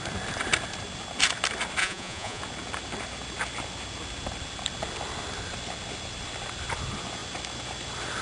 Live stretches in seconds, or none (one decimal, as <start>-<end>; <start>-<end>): 0.0-1.8; 2.4-8.2